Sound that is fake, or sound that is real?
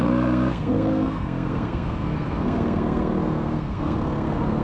fake